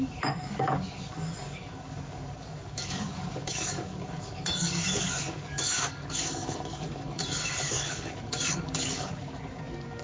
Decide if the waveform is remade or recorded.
remade